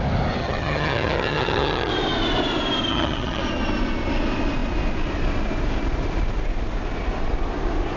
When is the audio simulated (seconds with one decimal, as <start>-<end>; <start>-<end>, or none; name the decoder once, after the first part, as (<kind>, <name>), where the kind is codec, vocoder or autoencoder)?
0.4-1.9 (vocoder, HiFi-GAN); 2.9-3.4